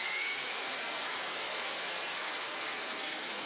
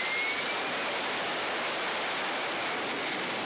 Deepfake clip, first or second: first